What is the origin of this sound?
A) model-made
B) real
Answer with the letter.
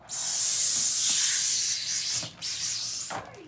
B